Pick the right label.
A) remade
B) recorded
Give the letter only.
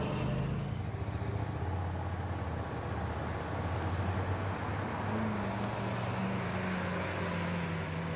B